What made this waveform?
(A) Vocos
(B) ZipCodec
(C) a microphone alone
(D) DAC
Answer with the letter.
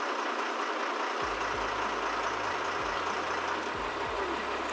C